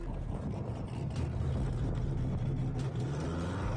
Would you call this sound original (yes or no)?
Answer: yes